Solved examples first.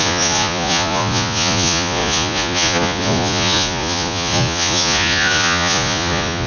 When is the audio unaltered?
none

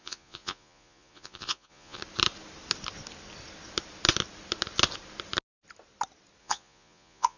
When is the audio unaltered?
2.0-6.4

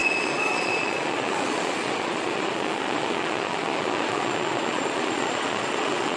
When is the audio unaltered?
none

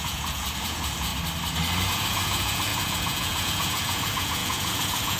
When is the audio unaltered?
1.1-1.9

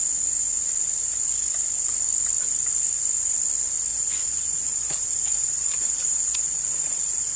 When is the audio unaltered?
0.0-3.9